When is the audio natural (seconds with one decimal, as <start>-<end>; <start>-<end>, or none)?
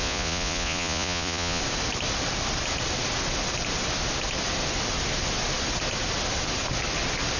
1.6-7.4